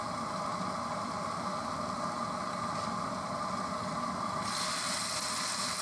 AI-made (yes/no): no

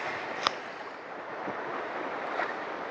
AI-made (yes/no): no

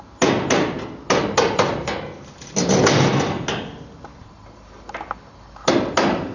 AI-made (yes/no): no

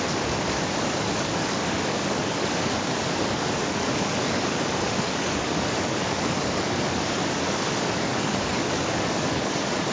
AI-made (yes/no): yes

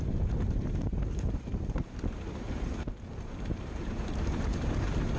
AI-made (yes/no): yes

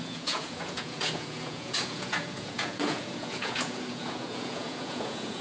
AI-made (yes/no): yes